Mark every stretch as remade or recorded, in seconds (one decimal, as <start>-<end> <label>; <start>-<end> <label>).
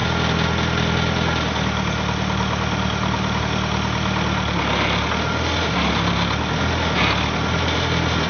0.0-8.3 recorded